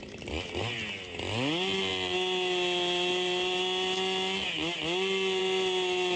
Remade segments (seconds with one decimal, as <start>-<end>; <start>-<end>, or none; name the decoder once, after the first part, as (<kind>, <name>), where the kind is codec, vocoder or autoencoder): none